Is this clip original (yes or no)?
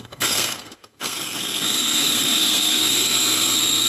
no